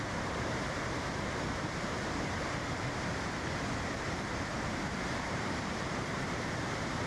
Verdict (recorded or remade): remade